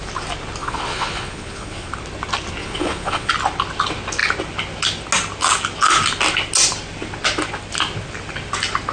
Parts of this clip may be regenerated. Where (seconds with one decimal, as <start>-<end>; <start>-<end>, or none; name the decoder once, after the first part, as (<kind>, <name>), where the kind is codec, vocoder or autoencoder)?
0.6-1.9 (vocoder, Vocos); 2.6-3.3